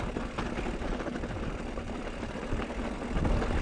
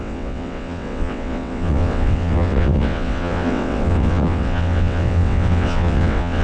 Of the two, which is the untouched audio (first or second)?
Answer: first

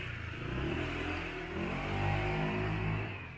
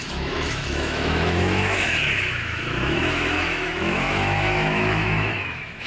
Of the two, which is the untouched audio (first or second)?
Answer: first